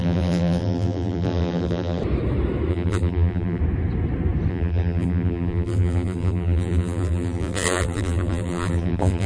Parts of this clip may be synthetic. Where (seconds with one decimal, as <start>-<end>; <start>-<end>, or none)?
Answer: 0.0-2.0; 2.7-3.6; 4.5-9.3